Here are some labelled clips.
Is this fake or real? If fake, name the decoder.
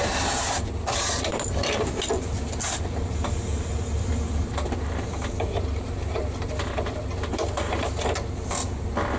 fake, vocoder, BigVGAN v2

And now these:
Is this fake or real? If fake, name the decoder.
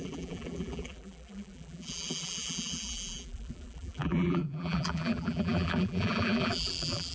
fake, vocoder, BigVGAN v2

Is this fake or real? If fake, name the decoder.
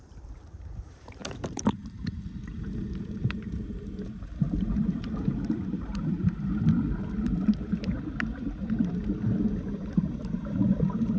fake, vocoder, BigVGAN v2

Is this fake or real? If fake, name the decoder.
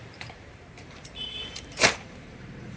fake, vocoder, BigVGAN v2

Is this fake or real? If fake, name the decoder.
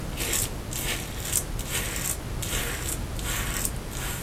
real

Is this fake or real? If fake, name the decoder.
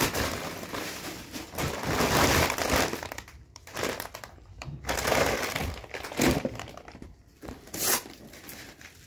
fake, vocoder, BigVGAN v2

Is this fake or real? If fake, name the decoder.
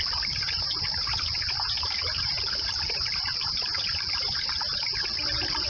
fake, vocoder, BigVGAN v2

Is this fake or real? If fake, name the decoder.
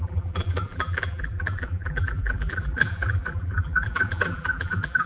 fake, vocoder, BigVGAN v2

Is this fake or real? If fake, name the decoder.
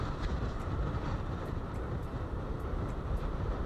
fake, vocoder, BigVGAN v2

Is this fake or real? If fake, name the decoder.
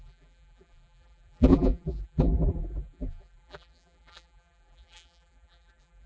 fake, vocoder, BigVGAN v2